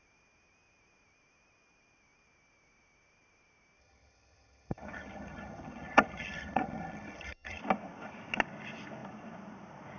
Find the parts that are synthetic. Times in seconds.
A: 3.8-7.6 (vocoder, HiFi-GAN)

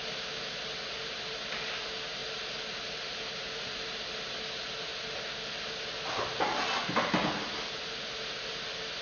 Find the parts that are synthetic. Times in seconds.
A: none

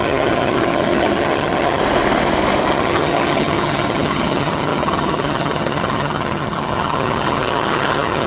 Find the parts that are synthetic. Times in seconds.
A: 0.0-1.8 (vocoder, HiFi-GAN); 2.7-8.3

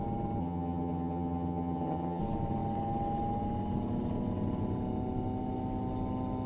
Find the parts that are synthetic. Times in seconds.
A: 0.4-2.2 (vocoder, HiFi-GAN)

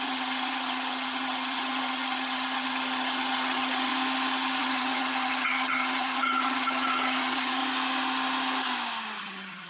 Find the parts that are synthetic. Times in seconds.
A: 0.0-3.9 (vocoder, HiFi-GAN); 4.6-7.6; 9.2-9.7

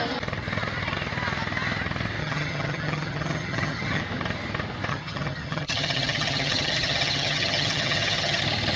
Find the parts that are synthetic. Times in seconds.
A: 2.2-4.0 (vocoder, HiFi-GAN); 4.9-8.4

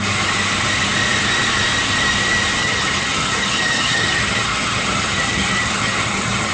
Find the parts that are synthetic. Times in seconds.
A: 2.6-6.5 (vocoder, HiFi-GAN)